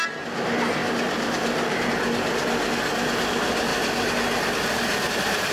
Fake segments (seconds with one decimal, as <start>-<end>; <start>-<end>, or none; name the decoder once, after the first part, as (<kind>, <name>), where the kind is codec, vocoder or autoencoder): 0.8-1.9 (vocoder, BigVGAN v2)

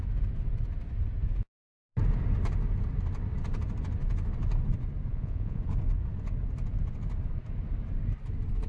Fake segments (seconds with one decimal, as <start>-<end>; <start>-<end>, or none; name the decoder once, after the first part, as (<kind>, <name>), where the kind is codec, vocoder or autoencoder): 5.1-5.6 (vocoder, Vocos)

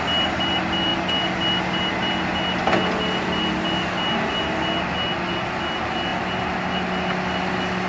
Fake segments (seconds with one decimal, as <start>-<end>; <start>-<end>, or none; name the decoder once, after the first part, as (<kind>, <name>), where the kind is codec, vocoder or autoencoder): none

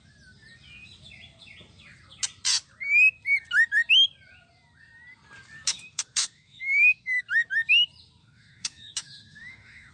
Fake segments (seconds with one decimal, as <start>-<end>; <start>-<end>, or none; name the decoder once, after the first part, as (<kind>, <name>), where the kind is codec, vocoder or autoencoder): 5.7-7.2 (autoencoder, DAC-VAE); 8.2-9.9

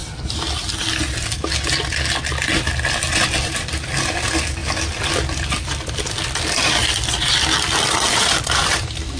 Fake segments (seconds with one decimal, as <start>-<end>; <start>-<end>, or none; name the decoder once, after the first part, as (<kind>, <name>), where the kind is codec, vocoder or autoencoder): 2.2-9.2 (vocoder, BigVGAN v2)

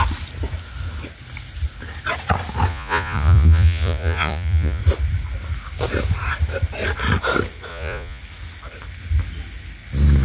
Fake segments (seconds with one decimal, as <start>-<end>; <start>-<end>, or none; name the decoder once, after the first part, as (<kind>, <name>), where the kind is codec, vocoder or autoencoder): 2.7-4.8 (vocoder, Vocos); 7.7-8.2